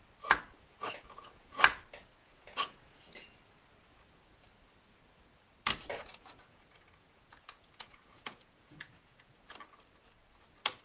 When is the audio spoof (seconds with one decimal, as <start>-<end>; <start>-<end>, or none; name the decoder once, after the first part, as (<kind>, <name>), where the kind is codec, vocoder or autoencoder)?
0.8-1.6 (vocoder, Vocos); 2.2-3.4; 5.9-9.5